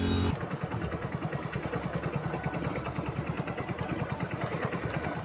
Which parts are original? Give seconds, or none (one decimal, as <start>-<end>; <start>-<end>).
0.0-2.7